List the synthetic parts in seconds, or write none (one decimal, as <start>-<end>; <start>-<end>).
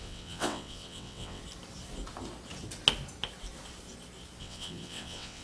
0.0-1.4; 4.4-5.4